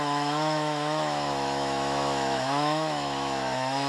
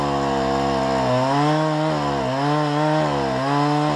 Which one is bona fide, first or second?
second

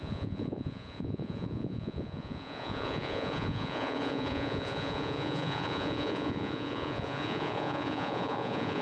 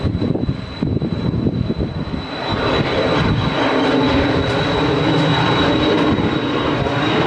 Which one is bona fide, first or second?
second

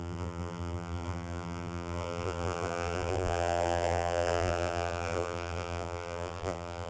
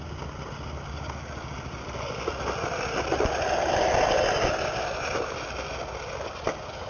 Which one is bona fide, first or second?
second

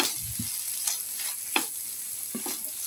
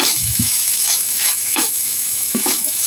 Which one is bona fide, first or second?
first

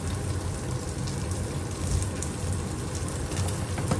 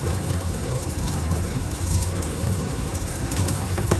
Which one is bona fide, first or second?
first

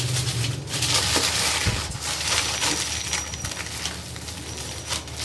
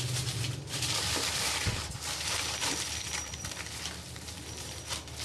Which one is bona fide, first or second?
first